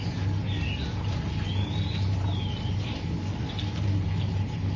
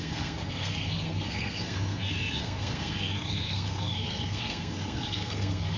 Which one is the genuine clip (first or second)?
first